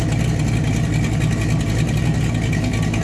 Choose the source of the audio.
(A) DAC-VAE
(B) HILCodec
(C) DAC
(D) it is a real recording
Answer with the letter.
D